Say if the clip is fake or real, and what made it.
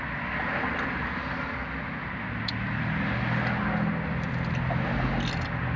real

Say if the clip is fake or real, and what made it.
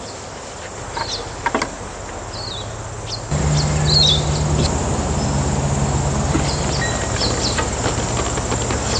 real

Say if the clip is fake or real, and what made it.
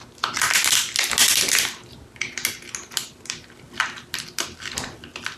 real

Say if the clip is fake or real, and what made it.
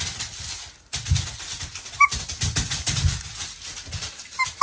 real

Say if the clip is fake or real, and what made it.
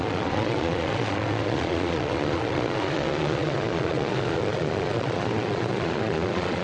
fake, vocoder, Vocos